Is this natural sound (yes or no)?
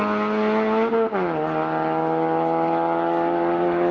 yes